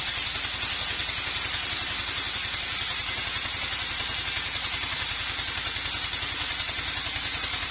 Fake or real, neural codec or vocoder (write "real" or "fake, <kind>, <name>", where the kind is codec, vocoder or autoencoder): real